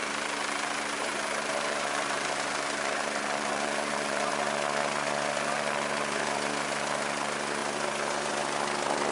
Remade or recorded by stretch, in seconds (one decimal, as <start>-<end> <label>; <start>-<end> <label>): 0.0-4.3 remade; 4.3-9.1 recorded